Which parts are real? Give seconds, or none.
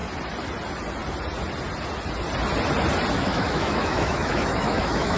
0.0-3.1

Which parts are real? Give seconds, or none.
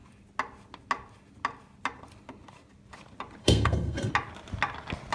0.0-3.4; 4.1-5.1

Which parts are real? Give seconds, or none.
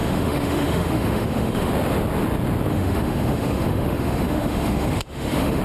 1.7-2.7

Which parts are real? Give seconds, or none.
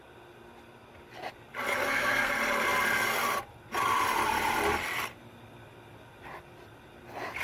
0.0-1.8; 2.3-7.4